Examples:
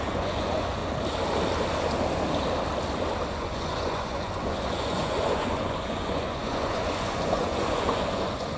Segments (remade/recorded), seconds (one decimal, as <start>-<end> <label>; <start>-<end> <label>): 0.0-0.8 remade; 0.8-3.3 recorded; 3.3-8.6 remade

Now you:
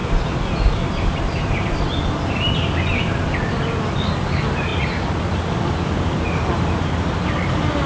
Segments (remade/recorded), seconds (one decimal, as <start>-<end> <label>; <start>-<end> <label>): 0.0-7.9 recorded

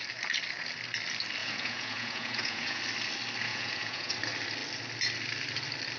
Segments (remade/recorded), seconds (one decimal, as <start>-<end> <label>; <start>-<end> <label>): 0.0-1.4 recorded; 1.4-2.8 remade; 2.8-3.5 recorded; 3.5-4.1 remade; 4.1-6.0 recorded

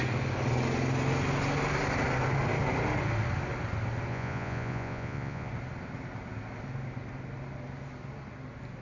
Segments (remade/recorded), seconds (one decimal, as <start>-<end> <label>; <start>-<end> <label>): 0.0-4.1 recorded; 4.1-5.5 remade; 5.5-8.8 recorded

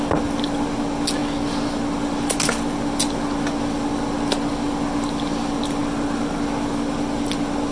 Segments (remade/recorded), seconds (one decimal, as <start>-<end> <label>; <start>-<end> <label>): 0.0-7.7 recorded

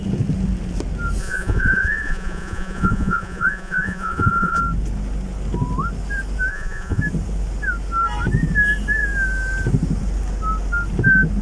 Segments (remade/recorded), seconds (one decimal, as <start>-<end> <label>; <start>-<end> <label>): 0.0-1.2 recorded; 1.2-4.6 remade; 4.6-6.5 recorded; 6.5-7.0 remade; 7.0-11.4 recorded

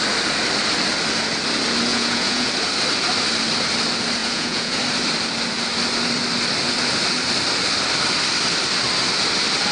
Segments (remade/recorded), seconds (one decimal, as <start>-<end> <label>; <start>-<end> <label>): 0.0-1.9 recorded; 1.9-2.5 remade; 2.5-4.2 recorded; 4.2-4.8 remade; 4.8-9.7 recorded

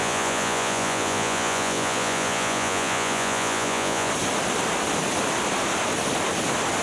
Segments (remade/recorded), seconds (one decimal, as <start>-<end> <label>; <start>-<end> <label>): 0.0-4.1 remade; 4.1-6.8 recorded